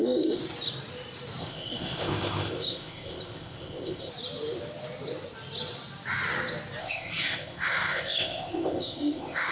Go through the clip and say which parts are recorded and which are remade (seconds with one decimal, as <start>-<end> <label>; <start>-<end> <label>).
0.0-0.4 remade; 0.4-1.4 recorded; 1.4-4.1 remade; 4.1-6.8 recorded; 6.8-9.5 remade